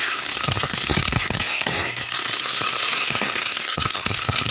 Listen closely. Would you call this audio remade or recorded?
remade